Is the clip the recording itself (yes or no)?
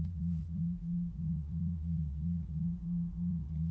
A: no